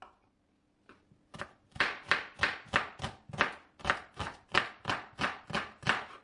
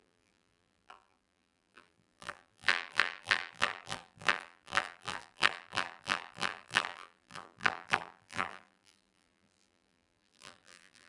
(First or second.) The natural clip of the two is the first